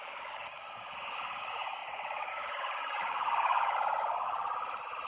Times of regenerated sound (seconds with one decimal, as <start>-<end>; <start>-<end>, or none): 0.0-4.3